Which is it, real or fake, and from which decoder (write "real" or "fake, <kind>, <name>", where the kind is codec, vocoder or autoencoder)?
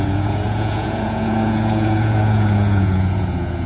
fake, vocoder, Vocos